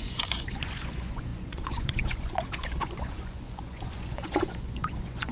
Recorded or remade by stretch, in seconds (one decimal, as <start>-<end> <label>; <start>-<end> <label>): 0.0-5.3 remade